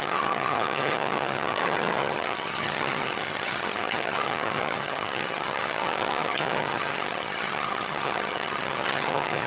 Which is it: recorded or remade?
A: remade